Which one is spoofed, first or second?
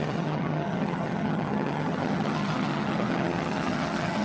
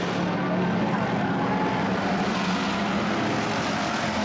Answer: first